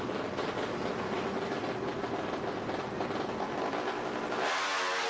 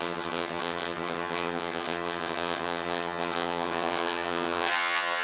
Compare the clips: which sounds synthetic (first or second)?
second